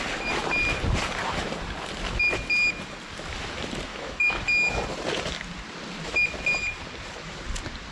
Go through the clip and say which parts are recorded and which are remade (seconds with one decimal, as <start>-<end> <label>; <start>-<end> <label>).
0.0-3.9 recorded; 3.9-4.4 remade; 4.4-7.9 recorded